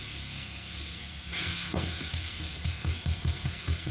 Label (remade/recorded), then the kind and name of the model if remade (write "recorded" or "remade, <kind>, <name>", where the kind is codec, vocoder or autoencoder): remade, codec, SNAC